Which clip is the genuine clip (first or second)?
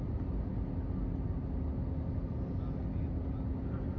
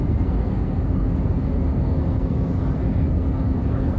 first